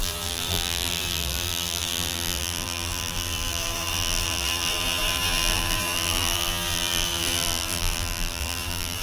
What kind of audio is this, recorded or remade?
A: remade